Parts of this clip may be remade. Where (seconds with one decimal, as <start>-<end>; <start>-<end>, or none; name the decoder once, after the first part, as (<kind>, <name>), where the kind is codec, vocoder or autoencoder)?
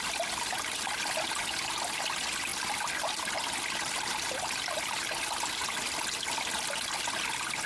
none